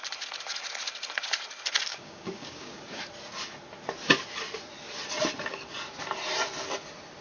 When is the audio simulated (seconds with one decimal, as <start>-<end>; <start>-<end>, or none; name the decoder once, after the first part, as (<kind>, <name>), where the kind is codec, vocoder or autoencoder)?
1.9-3.0 (codec, DAC)